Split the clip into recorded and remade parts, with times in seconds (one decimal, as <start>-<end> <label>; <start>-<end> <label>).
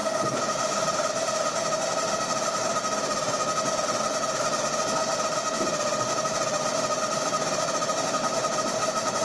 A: 0.0-2.7 remade; 2.7-7.7 recorded; 7.7-9.2 remade